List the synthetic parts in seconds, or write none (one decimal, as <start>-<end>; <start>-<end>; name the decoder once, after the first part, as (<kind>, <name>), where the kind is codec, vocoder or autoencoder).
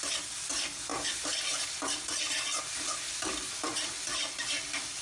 none